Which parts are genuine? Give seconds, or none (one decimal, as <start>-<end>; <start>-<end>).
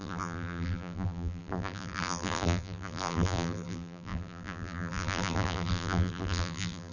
none